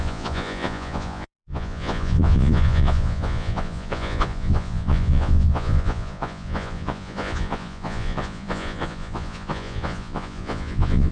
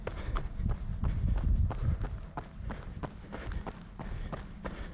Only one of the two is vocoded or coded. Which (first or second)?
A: first